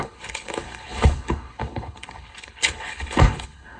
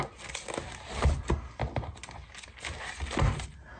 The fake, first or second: first